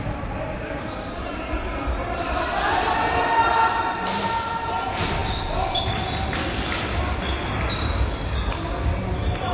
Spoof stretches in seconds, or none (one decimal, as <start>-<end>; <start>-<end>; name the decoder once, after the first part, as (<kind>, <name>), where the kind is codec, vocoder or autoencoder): none